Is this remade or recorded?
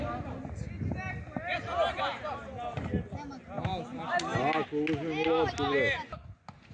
recorded